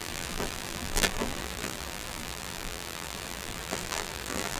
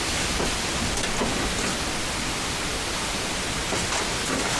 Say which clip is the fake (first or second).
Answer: first